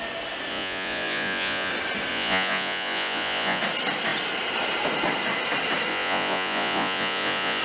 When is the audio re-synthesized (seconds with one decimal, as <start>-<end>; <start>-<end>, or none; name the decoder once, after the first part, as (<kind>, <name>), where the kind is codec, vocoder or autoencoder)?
0.5-1.7 (vocoder, Vocos); 2.1-3.6; 5.9-7.6